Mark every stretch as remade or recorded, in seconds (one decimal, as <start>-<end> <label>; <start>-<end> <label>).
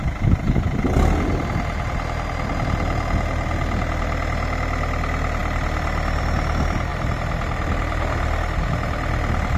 0.0-9.6 recorded